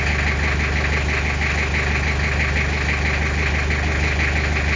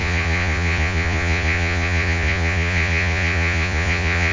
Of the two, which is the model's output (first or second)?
second